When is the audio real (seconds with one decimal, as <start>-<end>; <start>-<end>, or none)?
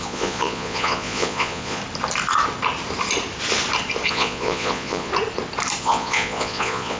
1.8-4.1; 5.1-5.8